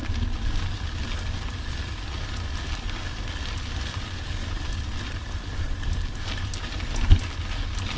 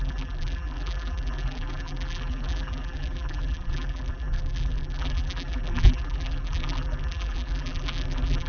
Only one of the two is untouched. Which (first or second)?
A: first